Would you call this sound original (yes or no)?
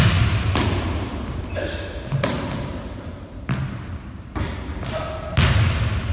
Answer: yes